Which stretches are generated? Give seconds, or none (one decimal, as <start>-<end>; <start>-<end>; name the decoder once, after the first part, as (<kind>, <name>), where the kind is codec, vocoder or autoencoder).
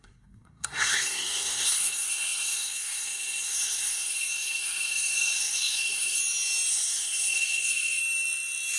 0.0-6.2 (codec, SNAC); 6.7-8.0